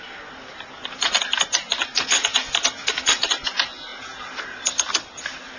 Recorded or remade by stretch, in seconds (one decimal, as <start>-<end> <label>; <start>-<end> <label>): 0.0-5.6 recorded

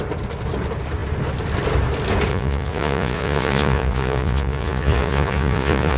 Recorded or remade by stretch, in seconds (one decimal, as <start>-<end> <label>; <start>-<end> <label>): 0.0-2.3 recorded; 2.3-6.0 remade

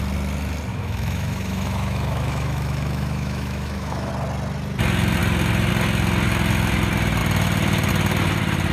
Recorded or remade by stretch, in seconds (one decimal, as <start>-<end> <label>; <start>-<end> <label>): 0.0-0.7 recorded; 0.7-4.1 remade; 4.1-8.7 recorded